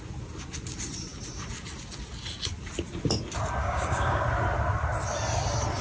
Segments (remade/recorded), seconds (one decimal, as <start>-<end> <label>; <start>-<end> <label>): 0.0-3.6 recorded; 3.6-4.2 remade; 4.2-5.8 recorded